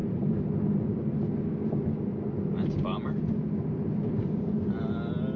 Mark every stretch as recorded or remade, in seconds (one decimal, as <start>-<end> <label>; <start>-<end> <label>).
0.0-5.4 recorded